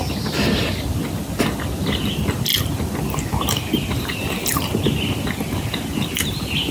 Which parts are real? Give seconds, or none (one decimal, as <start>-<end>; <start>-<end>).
0.0-6.7